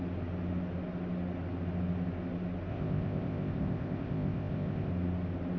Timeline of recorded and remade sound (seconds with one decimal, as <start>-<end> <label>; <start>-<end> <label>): 0.0-2.7 recorded; 2.7-4.9 remade; 4.9-5.6 recorded